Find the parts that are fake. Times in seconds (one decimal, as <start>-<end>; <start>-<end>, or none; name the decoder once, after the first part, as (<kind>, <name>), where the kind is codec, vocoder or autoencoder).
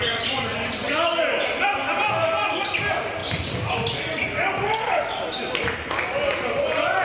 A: none